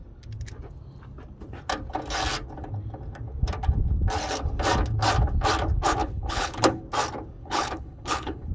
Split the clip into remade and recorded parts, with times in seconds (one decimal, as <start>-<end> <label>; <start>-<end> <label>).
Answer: 0.0-6.0 recorded; 6.0-6.8 remade; 6.8-7.4 recorded; 7.4-8.5 remade

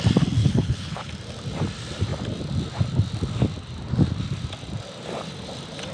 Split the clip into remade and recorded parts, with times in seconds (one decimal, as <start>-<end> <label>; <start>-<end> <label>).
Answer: 0.0-0.4 recorded; 0.4-1.1 remade; 1.1-5.9 recorded